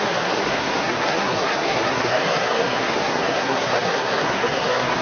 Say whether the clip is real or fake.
fake